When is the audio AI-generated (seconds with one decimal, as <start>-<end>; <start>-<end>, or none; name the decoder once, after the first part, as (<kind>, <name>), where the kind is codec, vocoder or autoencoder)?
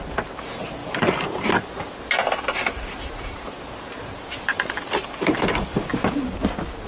none